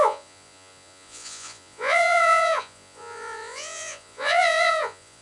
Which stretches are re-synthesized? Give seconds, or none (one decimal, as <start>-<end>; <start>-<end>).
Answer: 0.0-5.2